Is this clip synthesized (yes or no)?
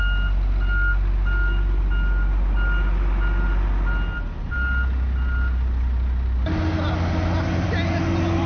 no